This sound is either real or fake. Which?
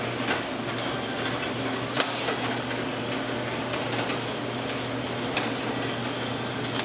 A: real